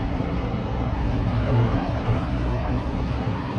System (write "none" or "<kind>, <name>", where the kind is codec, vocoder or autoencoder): codec, SNAC